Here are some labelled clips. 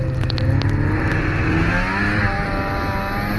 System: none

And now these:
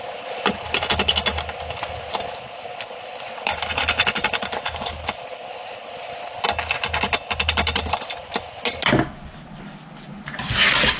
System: none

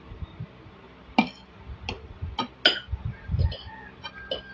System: none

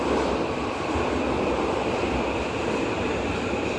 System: none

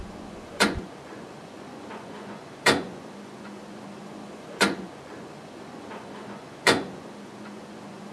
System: vocoder, Vocos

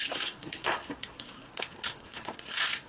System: codec, SNAC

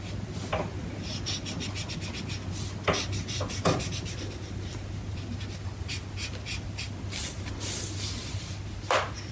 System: none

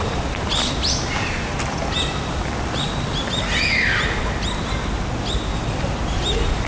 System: none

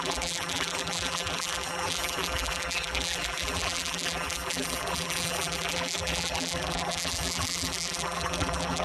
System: vocoder, BigVGAN v2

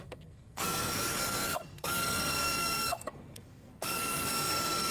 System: codec, SNAC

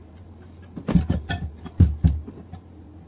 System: vocoder, BigVGAN v2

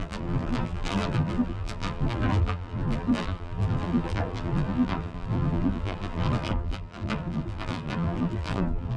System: vocoder, BigVGAN v2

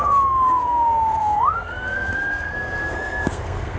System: codec, SNAC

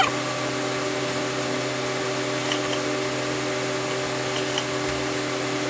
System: none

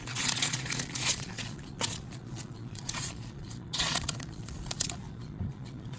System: vocoder, Vocos